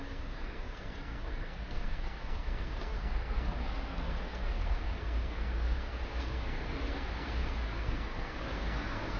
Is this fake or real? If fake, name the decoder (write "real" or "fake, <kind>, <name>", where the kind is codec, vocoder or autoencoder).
fake, codec, SNAC